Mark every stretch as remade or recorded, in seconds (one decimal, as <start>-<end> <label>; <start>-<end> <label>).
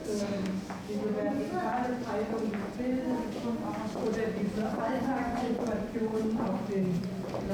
0.0-0.8 remade; 0.8-7.5 recorded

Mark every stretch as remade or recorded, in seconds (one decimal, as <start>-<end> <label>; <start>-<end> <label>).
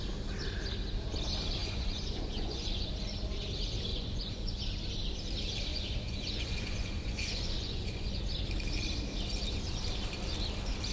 0.0-1.6 recorded; 1.6-2.9 remade; 2.9-3.9 recorded; 3.9-4.6 remade; 4.6-5.7 recorded; 5.7-8.2 remade; 8.2-10.9 recorded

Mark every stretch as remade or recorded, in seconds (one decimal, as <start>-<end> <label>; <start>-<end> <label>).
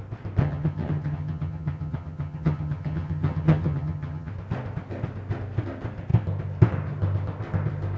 0.0-0.4 recorded; 0.4-4.3 remade; 4.3-8.0 recorded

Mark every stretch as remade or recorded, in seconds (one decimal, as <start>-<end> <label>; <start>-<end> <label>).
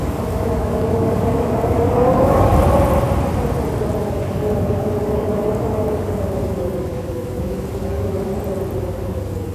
0.0-2.5 remade; 2.5-4.0 recorded; 4.0-8.3 remade; 8.3-8.8 recorded; 8.8-9.5 remade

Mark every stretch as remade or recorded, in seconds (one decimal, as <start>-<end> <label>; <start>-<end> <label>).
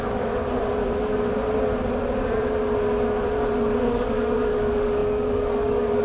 0.0-0.4 remade; 0.4-3.9 recorded; 3.9-6.0 remade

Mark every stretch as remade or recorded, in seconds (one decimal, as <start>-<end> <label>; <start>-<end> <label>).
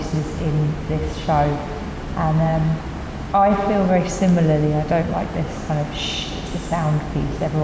0.0-7.6 recorded